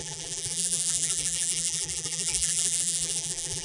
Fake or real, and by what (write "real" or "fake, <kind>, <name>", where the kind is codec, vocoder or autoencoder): fake, vocoder, BigVGAN v2